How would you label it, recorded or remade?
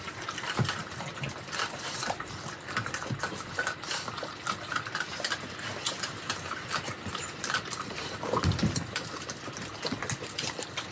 recorded